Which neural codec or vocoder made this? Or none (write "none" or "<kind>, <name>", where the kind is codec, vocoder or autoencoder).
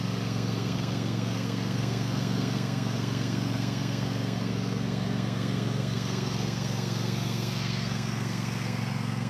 codec, SNAC